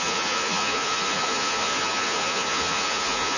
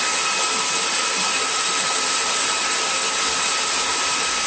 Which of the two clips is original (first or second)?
second